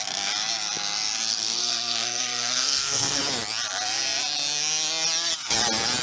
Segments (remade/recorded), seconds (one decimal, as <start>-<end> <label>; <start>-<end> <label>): 0.0-1.3 recorded; 1.3-3.2 remade; 3.2-6.0 recorded